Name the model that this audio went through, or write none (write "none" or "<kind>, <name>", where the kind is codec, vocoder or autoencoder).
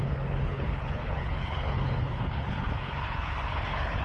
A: codec, HILCodec